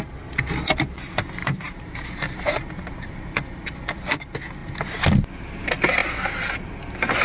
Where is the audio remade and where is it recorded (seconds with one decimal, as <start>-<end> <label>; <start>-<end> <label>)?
0.0-1.4 recorded; 1.4-3.3 remade; 3.3-7.2 recorded